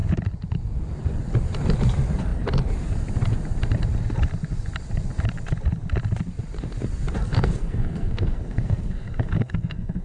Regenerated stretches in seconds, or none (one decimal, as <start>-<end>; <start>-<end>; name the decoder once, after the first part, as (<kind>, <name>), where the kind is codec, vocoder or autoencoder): 7.3-10.0 (codec, SNAC)